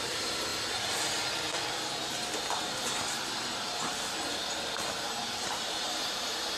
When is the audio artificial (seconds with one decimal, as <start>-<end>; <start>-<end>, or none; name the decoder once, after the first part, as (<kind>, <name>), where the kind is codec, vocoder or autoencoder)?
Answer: 0.0-0.5 (vocoder, BigVGAN v2); 2.5-3.9; 5.2-6.6